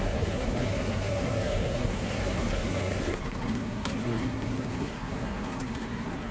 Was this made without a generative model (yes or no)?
no